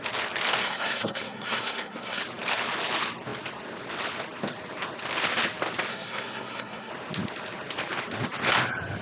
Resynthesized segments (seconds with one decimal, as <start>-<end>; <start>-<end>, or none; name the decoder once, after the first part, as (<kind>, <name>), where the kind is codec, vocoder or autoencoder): 0.6-2.2 (codec, SNAC); 5.9-6.9